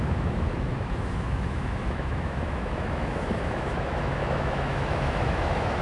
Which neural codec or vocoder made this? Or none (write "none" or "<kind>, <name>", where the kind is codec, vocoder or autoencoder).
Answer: autoencoder, DAC-VAE